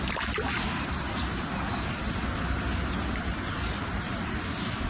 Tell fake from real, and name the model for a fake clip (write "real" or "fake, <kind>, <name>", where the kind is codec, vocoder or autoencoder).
real